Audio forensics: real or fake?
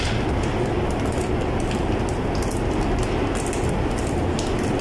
real